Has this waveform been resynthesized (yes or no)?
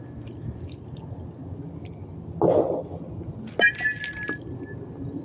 no